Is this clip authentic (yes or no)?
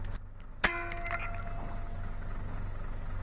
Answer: yes